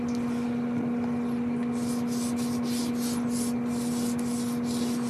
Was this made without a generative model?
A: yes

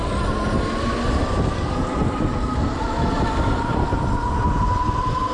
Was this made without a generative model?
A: yes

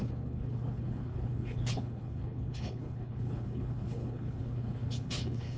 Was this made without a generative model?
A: no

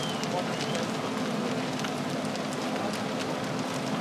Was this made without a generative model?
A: yes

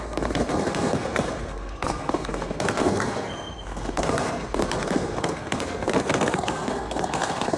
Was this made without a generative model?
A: no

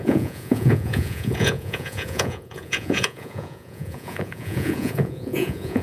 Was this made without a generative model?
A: no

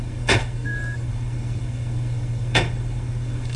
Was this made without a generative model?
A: no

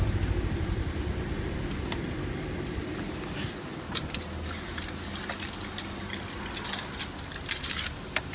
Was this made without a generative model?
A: yes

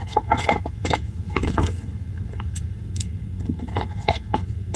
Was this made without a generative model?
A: no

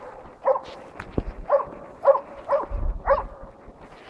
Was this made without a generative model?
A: yes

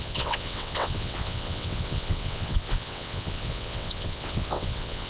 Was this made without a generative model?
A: no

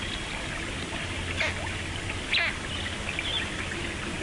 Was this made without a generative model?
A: yes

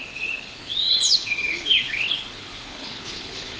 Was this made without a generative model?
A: no